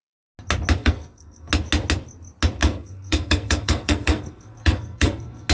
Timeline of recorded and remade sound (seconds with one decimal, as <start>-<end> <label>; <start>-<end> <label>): 0.0-0.8 recorded; 0.8-1.5 remade; 1.5-2.6 recorded; 2.6-5.5 remade

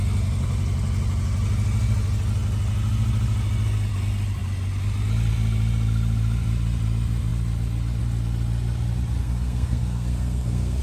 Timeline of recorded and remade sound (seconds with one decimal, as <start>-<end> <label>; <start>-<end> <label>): 0.0-9.2 recorded; 9.2-10.8 remade

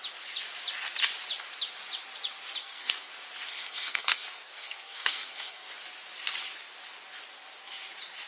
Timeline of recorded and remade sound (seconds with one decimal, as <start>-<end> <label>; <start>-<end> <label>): 0.0-2.6 recorded; 2.6-3.1 remade; 3.1-3.5 recorded; 3.5-5.7 remade; 5.7-8.3 recorded

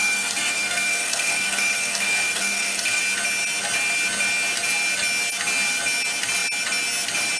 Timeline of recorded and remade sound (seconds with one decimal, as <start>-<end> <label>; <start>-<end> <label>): 0.0-3.0 remade; 3.0-7.4 recorded

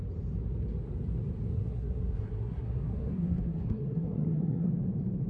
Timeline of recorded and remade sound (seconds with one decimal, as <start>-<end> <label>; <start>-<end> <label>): 0.0-1.5 recorded; 1.5-4.7 remade; 4.7-5.3 recorded

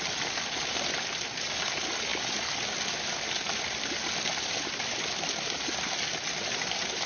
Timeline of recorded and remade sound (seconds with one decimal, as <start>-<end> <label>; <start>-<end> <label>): 0.0-7.1 recorded

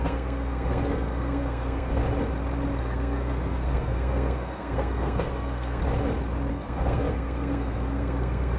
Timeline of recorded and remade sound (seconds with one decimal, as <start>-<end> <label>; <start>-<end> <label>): 0.0-2.0 remade; 2.0-2.8 recorded; 2.8-5.8 remade; 5.8-6.5 recorded; 6.5-8.6 remade